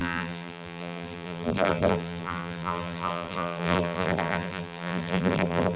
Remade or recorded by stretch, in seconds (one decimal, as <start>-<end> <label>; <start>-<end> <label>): 0.0-5.8 remade